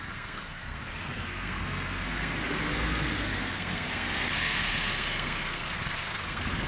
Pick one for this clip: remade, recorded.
remade